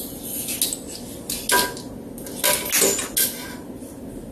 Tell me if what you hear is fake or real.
real